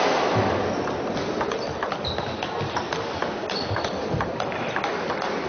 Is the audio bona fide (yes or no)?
yes